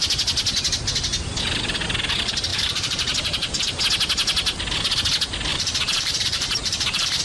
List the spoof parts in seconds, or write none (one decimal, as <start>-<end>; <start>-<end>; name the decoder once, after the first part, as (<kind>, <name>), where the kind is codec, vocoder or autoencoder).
2.5-3.8 (vocoder, BigVGAN v2); 5.5-7.2